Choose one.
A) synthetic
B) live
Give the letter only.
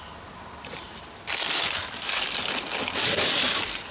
B